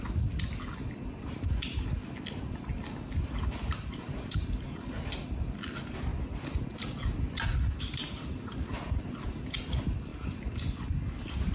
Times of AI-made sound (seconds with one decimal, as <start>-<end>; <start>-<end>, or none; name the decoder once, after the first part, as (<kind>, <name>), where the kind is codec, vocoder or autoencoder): none